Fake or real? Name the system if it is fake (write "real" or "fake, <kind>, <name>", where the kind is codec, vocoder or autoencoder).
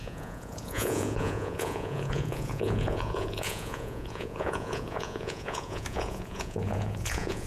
fake, vocoder, Vocos